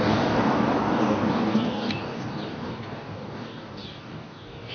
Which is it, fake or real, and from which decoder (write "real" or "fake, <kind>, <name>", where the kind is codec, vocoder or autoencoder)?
fake, codec, DAC